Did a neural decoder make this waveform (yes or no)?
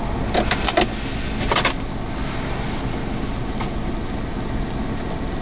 no